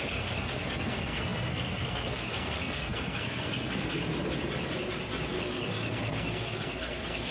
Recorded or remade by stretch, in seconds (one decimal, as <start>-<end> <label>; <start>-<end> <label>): 0.0-4.0 remade; 4.0-5.3 recorded; 5.3-7.3 remade